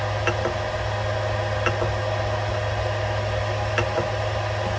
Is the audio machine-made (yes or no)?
no